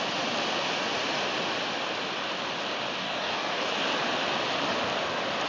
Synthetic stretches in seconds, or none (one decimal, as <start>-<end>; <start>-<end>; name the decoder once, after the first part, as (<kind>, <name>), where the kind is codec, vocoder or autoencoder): 3.0-3.7 (codec, DAC)